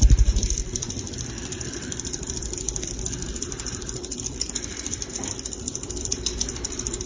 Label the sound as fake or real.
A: fake